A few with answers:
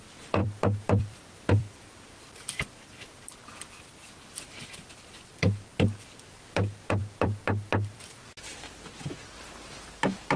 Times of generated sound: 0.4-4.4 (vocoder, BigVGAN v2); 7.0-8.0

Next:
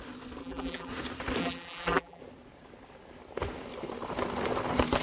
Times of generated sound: 0.4-0.9 (vocoder, BigVGAN v2); 1.4-2.2

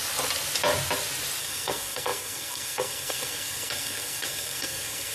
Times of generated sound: 1.4-5.1 (codec, SNAC)

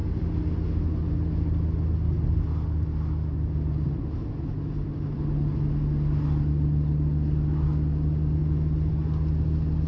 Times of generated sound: none

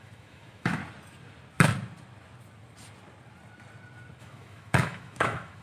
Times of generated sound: 0.0-0.8 (autoencoder, DAC-VAE); 4.2-5.6